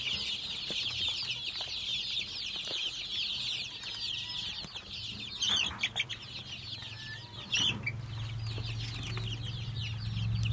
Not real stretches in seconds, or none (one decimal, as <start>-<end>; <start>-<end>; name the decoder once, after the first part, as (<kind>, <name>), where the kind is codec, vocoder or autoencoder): none